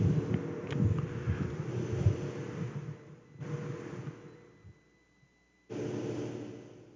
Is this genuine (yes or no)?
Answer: yes